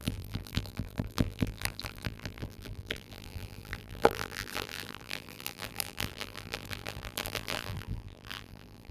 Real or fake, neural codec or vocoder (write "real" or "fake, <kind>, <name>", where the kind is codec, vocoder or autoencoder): fake, vocoder, BigVGAN v2